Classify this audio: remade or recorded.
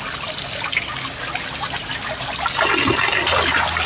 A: recorded